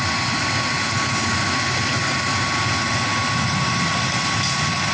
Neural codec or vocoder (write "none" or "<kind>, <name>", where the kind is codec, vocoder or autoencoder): none